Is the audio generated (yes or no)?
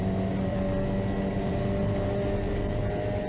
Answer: no